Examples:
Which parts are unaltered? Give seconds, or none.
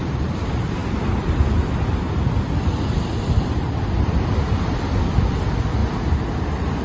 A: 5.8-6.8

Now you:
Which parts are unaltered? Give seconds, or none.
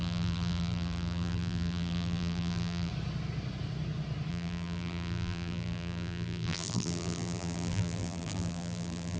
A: 2.9-4.3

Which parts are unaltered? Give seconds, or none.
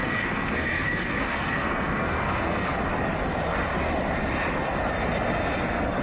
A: 2.8-6.0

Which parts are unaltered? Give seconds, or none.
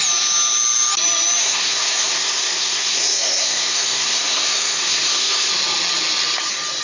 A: 0.0-1.4; 5.5-6.8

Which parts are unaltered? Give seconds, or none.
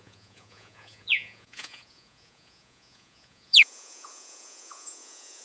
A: none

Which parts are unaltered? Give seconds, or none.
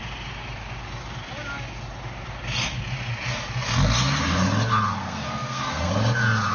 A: 0.0-5.0; 5.9-6.5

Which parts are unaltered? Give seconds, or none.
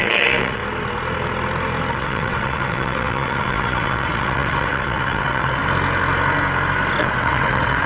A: 0.6-1.9; 5.6-7.0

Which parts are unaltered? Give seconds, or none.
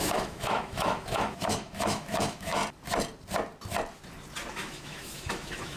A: 2.6-4.5